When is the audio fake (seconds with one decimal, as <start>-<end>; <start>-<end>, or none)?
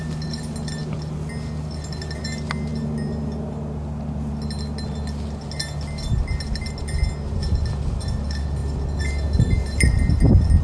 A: none